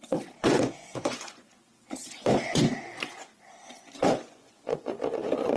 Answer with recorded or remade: remade